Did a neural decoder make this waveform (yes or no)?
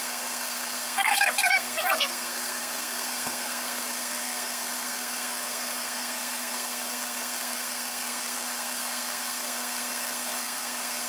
yes